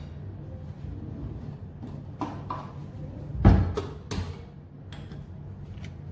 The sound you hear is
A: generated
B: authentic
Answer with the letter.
B